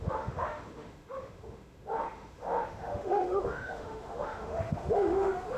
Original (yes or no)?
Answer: no